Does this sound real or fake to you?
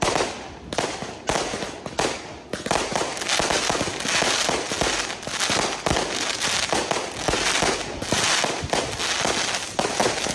real